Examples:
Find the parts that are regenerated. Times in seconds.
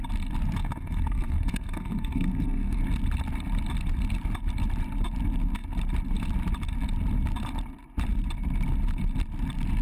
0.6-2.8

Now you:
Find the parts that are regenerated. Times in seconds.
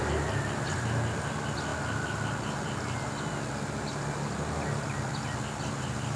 none